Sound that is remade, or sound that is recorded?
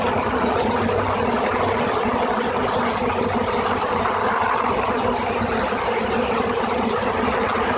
recorded